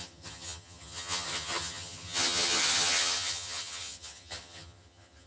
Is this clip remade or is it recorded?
remade